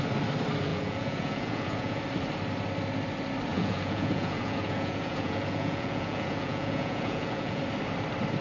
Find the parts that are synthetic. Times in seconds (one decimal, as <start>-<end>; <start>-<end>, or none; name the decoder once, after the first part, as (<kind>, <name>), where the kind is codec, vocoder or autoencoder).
0.7-2.0 (vocoder, Vocos); 3.5-7.6